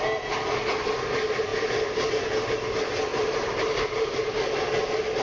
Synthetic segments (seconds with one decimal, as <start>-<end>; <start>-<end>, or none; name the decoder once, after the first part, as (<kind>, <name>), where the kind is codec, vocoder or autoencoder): none